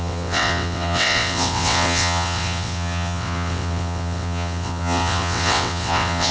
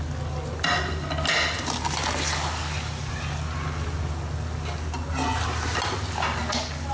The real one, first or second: second